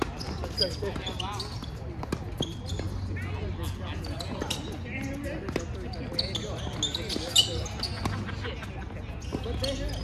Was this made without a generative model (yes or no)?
yes